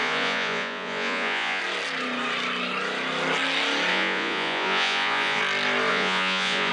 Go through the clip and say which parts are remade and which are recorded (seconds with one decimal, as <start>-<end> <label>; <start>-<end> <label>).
0.0-1.6 remade; 1.6-3.9 recorded; 3.9-5.4 remade; 5.4-5.9 recorded; 5.9-6.7 remade